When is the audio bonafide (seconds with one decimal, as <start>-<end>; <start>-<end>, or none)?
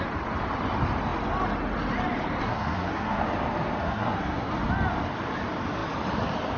0.0-2.4; 3.2-3.8; 4.5-6.6